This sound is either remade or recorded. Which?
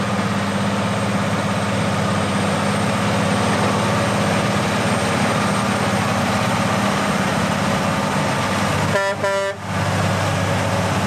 recorded